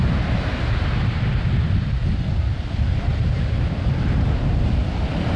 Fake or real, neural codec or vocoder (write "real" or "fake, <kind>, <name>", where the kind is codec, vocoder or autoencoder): real